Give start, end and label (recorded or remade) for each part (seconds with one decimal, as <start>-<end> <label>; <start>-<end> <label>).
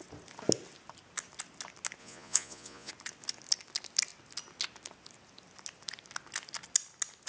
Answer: 0.0-2.0 recorded; 2.0-2.9 remade; 2.9-7.3 recorded